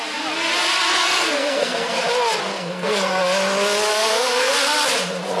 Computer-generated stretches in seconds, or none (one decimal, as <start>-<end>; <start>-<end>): 0.9-2.0; 2.5-3.2; 3.9-4.5